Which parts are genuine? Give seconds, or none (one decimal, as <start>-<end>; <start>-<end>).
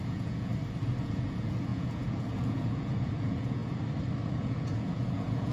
0.5-1.0; 3.6-4.3